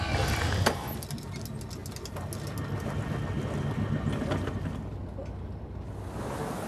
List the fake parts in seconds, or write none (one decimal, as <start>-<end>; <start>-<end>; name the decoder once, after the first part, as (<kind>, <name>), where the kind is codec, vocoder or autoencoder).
none